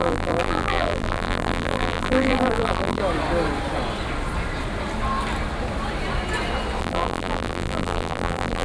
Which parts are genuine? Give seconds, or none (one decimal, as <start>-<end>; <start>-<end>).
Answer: 3.0-6.8